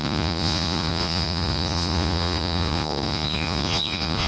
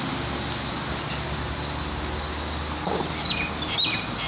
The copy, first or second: first